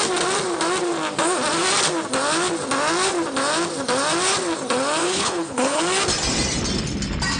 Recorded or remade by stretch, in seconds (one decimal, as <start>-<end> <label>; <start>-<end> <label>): 0.0-5.0 recorded; 5.0-5.8 remade; 5.8-7.4 recorded